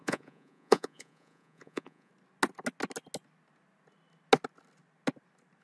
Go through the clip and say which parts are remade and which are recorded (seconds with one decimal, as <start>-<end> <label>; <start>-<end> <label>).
0.0-2.1 remade; 2.1-5.6 recorded